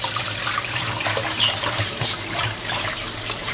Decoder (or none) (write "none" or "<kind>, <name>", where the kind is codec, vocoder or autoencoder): none